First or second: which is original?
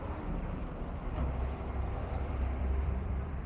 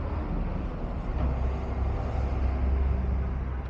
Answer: second